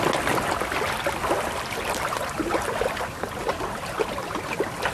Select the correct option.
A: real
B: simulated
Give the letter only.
A